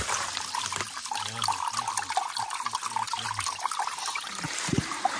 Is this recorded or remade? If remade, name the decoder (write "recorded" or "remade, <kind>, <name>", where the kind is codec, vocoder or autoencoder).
recorded